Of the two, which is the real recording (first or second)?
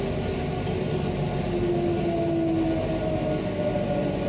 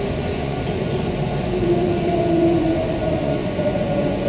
first